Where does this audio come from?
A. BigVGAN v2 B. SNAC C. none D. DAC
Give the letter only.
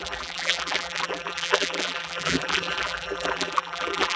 A